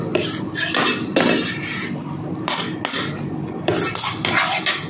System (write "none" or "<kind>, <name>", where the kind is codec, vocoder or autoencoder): none